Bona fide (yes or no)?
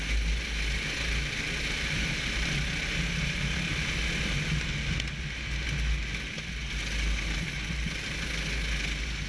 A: yes